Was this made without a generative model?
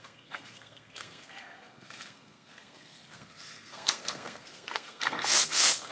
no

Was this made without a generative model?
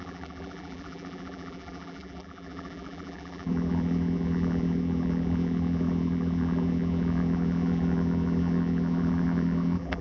no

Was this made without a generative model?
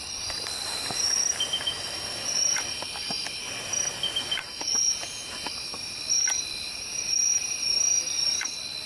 no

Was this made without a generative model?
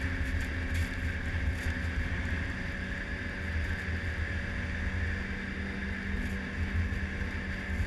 yes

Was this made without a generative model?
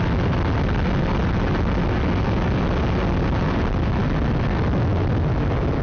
yes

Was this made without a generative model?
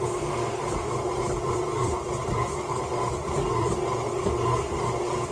no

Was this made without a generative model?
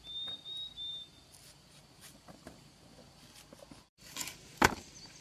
yes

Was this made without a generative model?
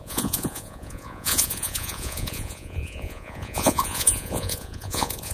no